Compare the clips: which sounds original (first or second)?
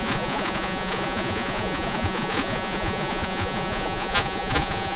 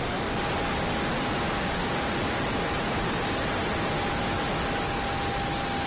second